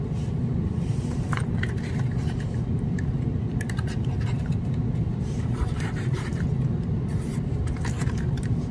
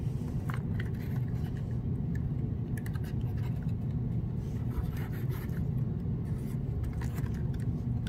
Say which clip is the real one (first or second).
second